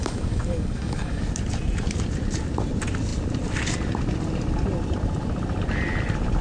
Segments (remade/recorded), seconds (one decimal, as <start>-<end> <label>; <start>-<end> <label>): 0.0-1.2 remade; 1.2-6.4 recorded